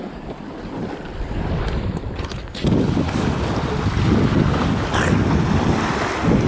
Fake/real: real